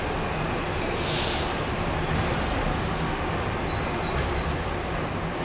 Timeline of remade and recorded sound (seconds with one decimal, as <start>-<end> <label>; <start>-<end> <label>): 0.0-2.7 recorded; 2.7-3.2 remade; 3.2-5.4 recorded